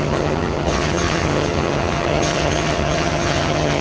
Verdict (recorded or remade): remade